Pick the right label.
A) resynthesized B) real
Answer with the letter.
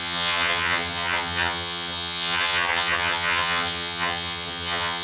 A